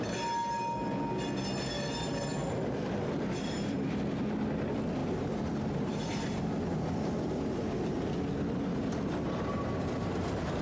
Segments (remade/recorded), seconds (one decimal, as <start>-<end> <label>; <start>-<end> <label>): 0.0-2.4 recorded; 2.4-3.8 remade; 3.8-5.0 recorded; 5.0-6.4 remade; 6.4-10.6 recorded